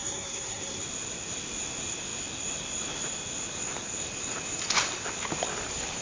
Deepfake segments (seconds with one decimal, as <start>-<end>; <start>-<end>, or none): 0.0-0.8